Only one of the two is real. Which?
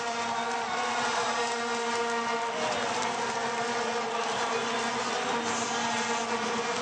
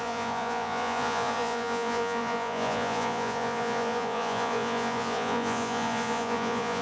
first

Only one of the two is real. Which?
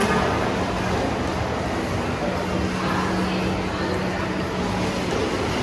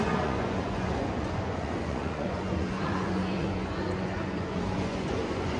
first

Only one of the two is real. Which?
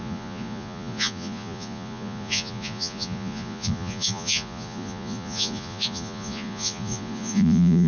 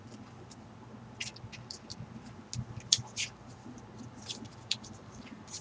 second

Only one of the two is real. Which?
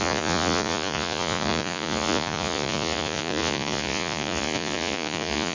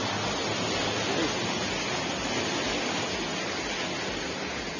second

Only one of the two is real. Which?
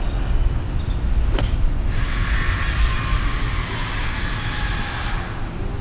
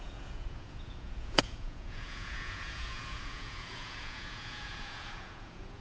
first